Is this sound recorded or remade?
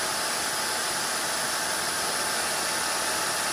recorded